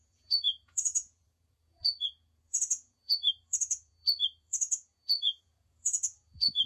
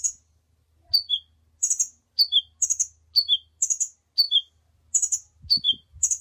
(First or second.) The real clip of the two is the second